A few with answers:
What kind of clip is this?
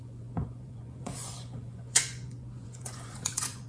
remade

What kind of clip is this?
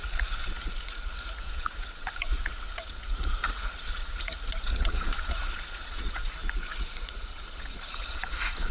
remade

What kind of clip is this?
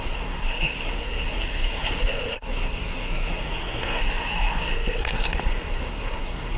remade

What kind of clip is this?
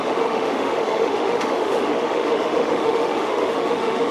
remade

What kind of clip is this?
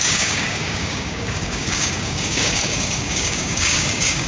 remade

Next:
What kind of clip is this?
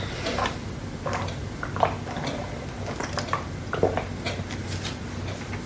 recorded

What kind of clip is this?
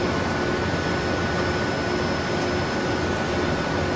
recorded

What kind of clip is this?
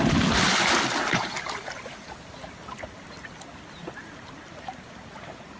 recorded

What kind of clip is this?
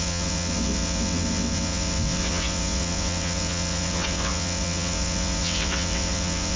remade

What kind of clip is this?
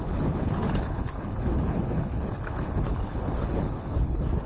remade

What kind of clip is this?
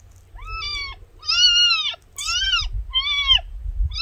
recorded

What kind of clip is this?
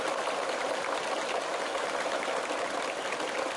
recorded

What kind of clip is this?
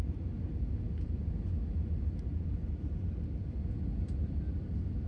remade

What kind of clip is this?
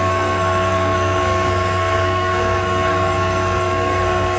remade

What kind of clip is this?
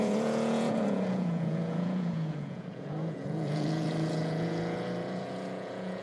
remade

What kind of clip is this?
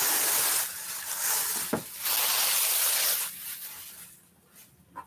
recorded